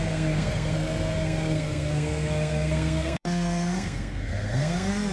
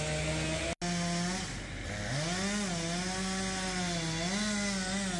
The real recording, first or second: second